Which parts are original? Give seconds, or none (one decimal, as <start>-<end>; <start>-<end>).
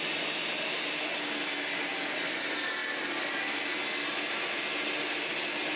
0.0-5.8